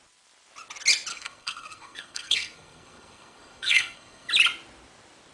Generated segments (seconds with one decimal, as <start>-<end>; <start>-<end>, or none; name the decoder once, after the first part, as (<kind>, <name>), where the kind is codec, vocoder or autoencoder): 1.1-4.3 (codec, SNAC)